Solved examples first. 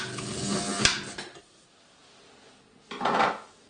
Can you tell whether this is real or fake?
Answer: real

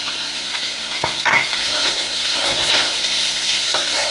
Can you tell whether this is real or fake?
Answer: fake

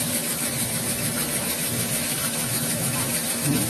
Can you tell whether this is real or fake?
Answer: fake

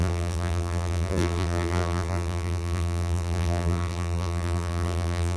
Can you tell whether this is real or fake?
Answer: fake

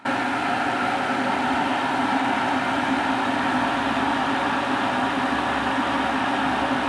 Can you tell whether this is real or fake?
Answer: real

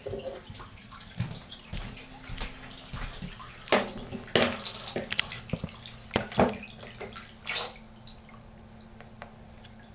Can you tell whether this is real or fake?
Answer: real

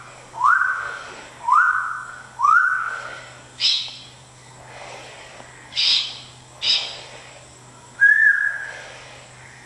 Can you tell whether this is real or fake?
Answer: fake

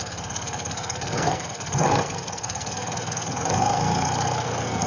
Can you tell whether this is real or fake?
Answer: fake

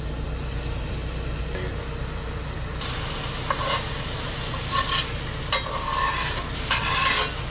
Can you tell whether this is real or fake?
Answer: real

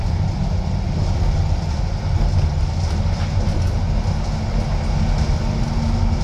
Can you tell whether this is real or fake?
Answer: real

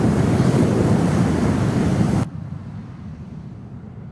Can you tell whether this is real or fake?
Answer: real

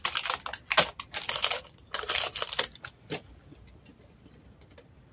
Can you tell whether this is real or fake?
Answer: real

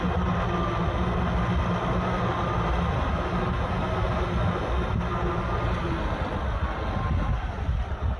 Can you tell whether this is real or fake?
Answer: real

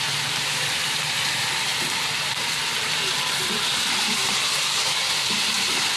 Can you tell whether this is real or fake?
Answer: fake